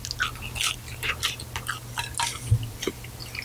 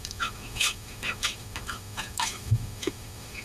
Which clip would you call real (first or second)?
first